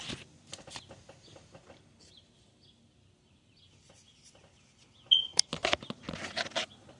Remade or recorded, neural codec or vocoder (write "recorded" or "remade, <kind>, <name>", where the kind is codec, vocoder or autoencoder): recorded